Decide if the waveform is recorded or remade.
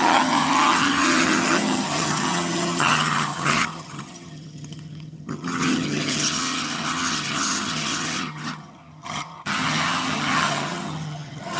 remade